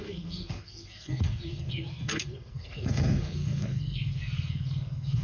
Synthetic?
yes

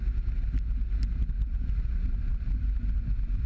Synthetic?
no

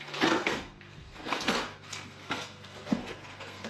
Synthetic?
yes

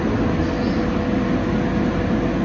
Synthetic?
no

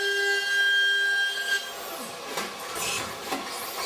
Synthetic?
no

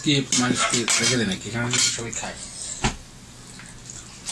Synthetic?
no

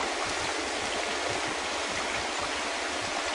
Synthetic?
no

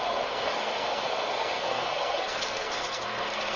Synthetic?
yes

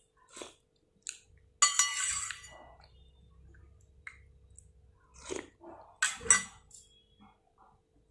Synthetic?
no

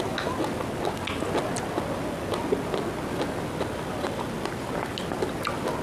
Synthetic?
no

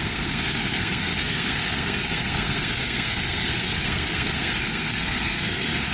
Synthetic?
yes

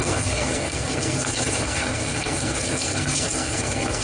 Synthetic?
yes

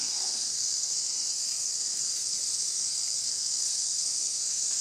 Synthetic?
yes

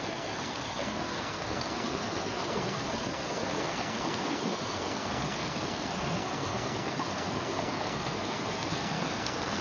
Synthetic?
yes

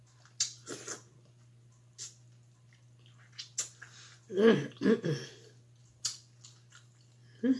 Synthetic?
no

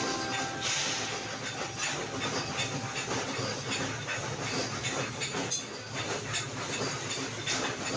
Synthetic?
no